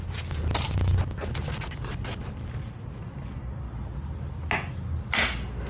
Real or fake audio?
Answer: real